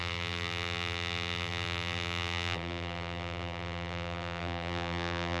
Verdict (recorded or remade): remade